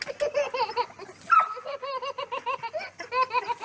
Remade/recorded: recorded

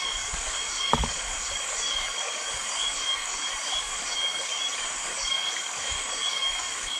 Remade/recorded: remade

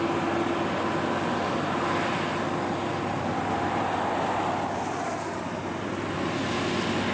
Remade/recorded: recorded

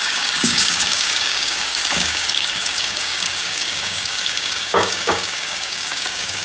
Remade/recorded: remade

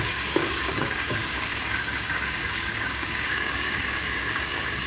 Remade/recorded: remade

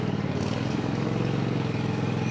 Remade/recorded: remade